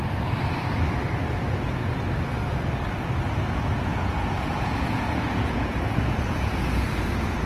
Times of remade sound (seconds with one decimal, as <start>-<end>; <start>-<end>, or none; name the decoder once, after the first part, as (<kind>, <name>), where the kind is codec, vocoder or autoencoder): 3.9-7.5 (vocoder, Vocos)